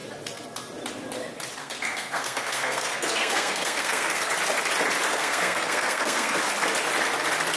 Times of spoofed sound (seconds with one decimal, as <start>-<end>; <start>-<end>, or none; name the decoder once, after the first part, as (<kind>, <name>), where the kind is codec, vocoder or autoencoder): 1.6-4.3 (codec, SNAC); 5.1-6.4